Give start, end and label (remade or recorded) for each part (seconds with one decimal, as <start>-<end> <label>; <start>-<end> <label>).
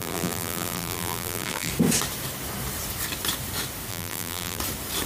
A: 0.0-1.7 remade; 1.7-3.9 recorded; 3.9-4.6 remade; 4.6-5.1 recorded